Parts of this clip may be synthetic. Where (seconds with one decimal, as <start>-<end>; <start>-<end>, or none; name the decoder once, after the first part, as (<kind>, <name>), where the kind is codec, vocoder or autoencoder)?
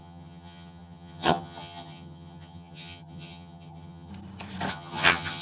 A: 0.0-4.1 (vocoder, HiFi-GAN); 4.7-5.4